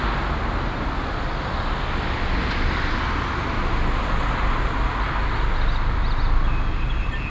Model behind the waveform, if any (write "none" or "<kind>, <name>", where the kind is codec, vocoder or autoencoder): none